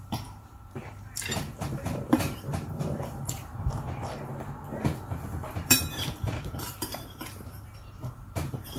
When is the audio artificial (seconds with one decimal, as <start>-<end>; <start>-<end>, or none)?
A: 0.0-4.3; 5.5-8.8